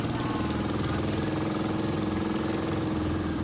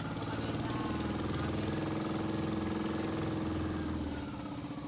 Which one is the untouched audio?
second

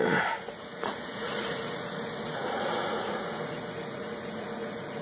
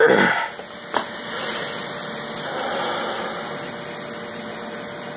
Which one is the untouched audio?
second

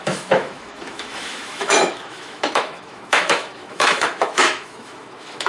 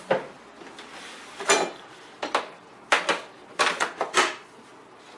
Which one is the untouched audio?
second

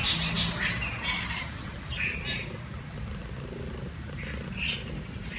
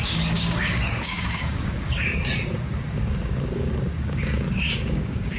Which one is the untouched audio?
first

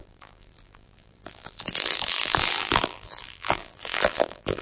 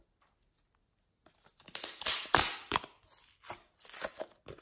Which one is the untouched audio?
second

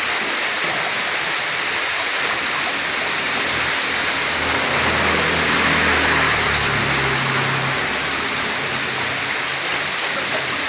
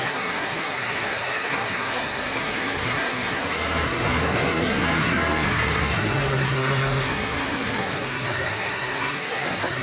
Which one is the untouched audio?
first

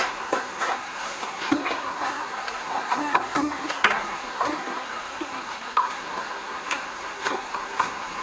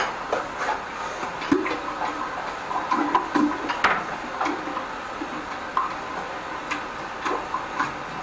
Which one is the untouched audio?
second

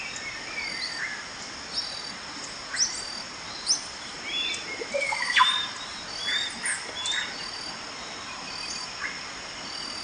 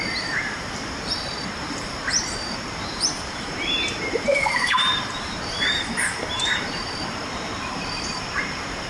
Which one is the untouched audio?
first